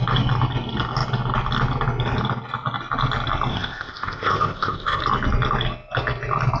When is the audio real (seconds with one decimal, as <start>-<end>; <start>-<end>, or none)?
0.0-3.5; 5.0-6.6